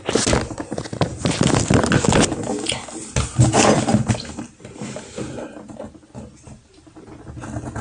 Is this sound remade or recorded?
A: recorded